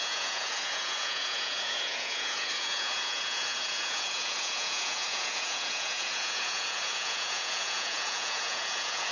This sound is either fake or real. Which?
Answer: fake